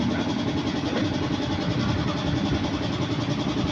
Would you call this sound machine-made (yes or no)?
no